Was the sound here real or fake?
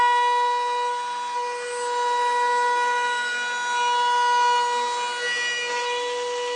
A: real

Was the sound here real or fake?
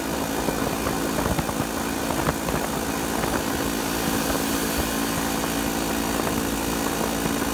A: real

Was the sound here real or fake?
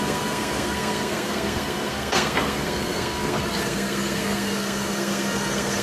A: fake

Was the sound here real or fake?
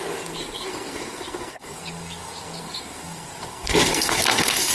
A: fake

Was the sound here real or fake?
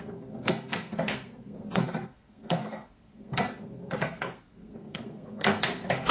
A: fake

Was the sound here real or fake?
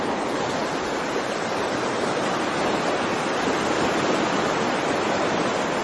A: real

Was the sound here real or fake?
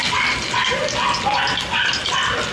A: real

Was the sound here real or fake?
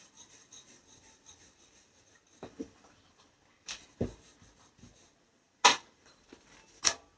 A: real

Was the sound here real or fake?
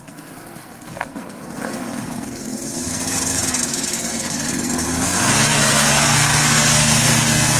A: fake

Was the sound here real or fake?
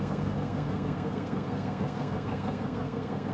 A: fake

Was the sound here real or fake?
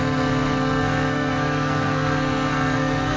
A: fake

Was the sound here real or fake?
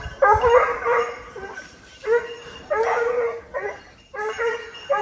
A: real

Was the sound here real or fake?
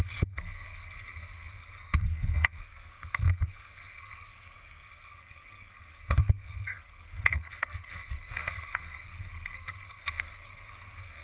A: fake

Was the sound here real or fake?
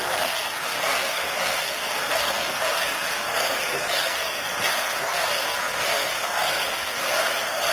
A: fake